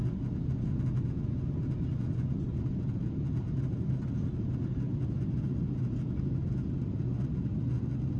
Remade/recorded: recorded